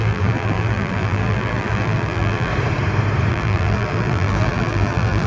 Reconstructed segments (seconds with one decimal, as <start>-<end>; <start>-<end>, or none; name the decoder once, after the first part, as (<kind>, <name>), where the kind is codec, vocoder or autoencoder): 0.0-2.5 (vocoder, BigVGAN v2); 3.3-5.3